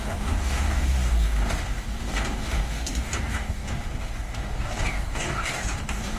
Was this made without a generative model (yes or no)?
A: no